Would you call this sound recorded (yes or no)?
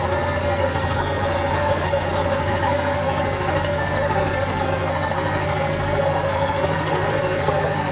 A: no